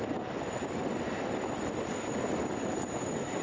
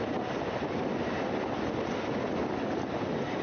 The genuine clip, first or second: second